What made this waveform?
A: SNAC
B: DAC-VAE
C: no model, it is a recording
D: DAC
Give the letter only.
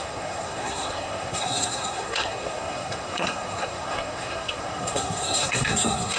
A